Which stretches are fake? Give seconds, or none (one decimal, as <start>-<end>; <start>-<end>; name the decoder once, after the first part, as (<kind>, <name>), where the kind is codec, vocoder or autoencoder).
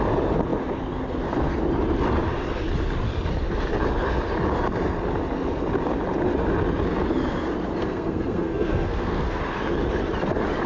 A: 7.8-9.4 (codec, SNAC)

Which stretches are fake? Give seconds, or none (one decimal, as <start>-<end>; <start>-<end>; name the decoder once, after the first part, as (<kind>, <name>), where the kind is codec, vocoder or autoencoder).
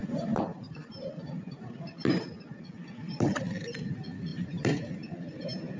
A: 0.0-2.2 (vocoder, BigVGAN v2); 3.0-3.9; 4.3-5.8